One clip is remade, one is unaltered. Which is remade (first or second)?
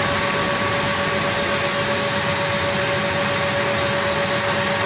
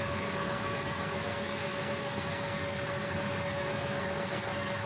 second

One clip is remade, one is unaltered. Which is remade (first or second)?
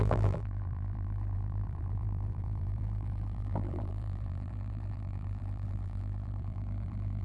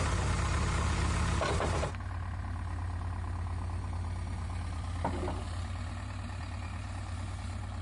first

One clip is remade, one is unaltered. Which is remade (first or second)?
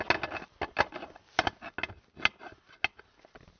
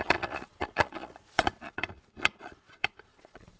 second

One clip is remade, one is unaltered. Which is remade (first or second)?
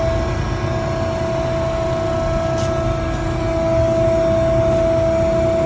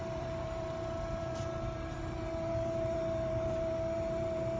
second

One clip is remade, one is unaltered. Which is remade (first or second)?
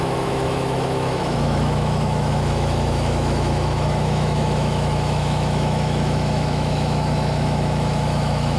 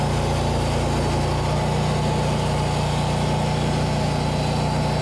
first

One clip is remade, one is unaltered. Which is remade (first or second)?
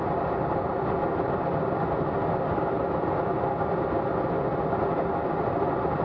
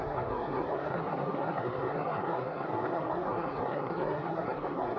second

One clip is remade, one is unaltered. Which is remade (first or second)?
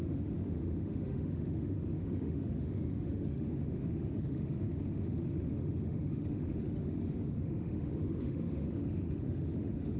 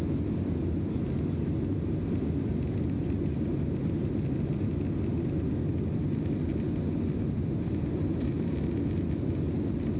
first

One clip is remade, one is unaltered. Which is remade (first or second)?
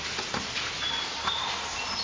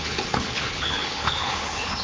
second